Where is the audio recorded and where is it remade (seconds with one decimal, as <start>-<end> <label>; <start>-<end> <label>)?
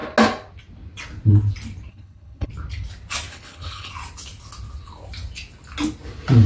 0.0-1.9 recorded; 1.9-2.5 remade; 2.5-3.3 recorded; 3.3-3.9 remade; 3.9-6.5 recorded